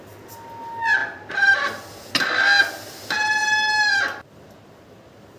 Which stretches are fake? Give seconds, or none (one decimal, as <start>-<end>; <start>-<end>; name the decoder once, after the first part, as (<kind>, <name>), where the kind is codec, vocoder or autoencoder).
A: 1.0-1.8 (vocoder, BigVGAN v2)